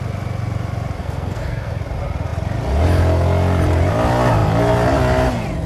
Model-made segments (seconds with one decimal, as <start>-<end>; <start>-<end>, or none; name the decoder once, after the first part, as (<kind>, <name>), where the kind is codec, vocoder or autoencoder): 1.0-1.8 (codec, SNAC)